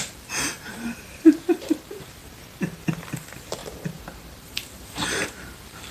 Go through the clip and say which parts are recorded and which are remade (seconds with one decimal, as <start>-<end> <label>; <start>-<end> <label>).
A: 0.0-2.2 remade; 2.2-3.2 recorded; 3.2-5.9 remade